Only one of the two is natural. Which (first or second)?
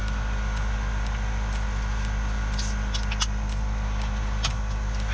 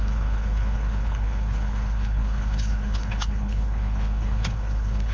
first